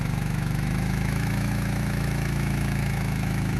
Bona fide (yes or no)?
no